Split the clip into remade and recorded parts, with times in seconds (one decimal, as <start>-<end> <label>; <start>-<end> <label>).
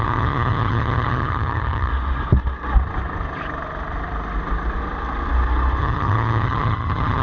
0.0-1.9 remade; 1.9-5.8 recorded; 5.8-7.2 remade